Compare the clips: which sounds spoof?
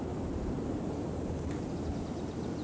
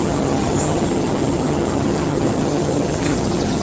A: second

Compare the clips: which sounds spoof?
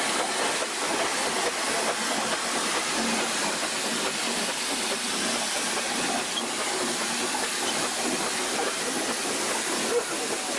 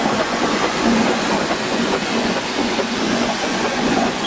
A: second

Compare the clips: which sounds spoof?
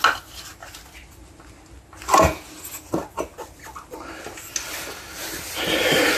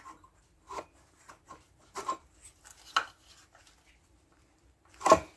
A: second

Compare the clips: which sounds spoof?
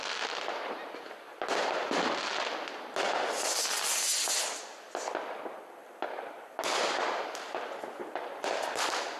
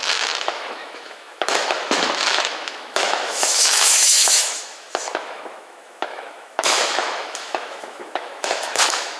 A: second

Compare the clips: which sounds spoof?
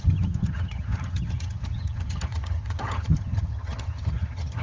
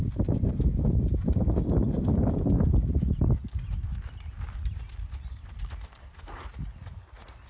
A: first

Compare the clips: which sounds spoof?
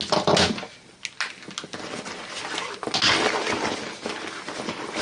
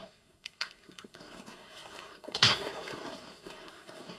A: second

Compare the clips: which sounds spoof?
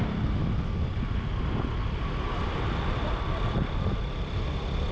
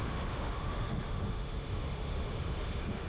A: second